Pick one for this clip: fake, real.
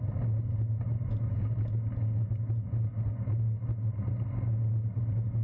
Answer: real